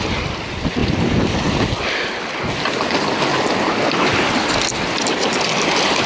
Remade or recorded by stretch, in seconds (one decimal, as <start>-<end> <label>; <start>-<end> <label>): 0.0-6.1 recorded